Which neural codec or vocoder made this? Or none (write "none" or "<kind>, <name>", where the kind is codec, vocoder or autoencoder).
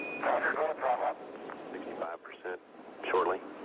none